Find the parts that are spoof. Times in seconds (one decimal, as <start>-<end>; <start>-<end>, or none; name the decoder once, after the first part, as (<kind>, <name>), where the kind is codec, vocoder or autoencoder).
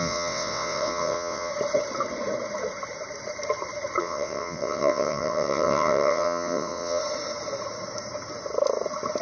0.0-1.5 (vocoder, WaveNeXt); 4.0-7.0